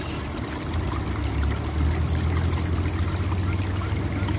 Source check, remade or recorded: recorded